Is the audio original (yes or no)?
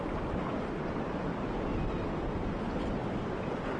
yes